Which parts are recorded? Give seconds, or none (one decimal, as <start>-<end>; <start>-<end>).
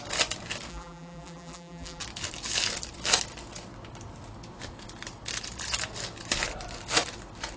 0.0-0.7; 2.0-7.6